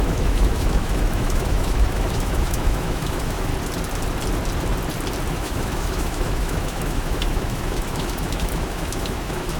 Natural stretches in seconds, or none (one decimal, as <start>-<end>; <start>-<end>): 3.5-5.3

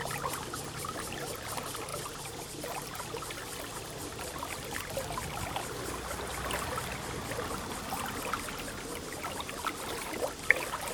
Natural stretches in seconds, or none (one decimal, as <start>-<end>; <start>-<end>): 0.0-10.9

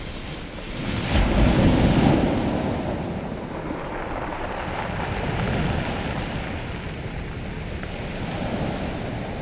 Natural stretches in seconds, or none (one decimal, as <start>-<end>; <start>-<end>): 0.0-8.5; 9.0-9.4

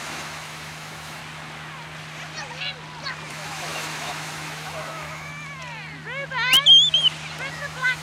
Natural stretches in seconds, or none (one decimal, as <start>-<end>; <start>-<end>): 1.2-3.3; 5.3-7.5

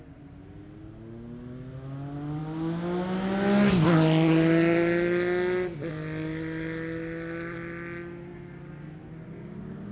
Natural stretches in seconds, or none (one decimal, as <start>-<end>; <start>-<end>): 0.0-9.9